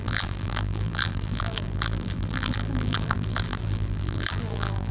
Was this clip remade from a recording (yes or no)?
yes